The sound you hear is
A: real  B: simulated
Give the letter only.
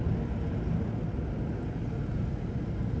A